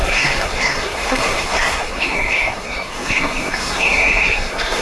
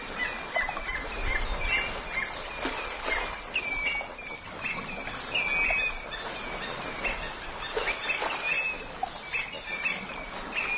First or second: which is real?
second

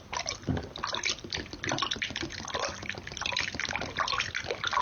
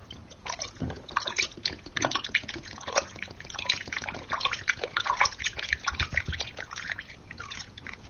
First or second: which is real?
first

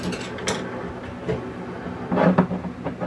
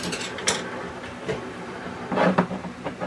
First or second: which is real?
first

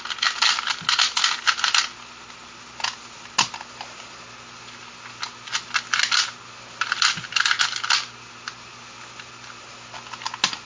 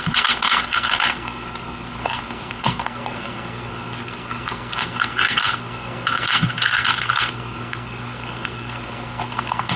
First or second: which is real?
first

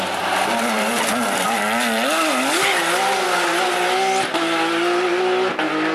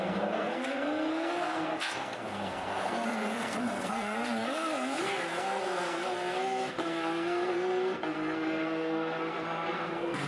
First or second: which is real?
first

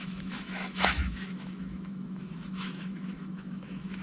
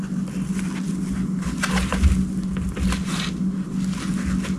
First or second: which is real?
second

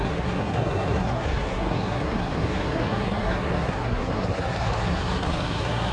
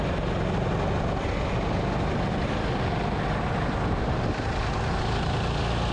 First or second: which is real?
second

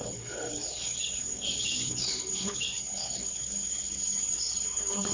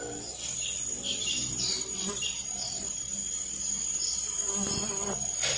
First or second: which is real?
second